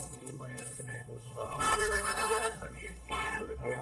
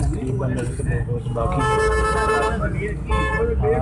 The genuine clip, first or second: second